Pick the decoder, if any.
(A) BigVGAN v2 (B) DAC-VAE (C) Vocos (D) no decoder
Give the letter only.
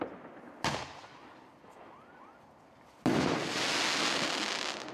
D